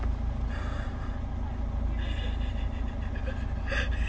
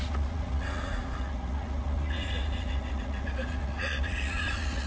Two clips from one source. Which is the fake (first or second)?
second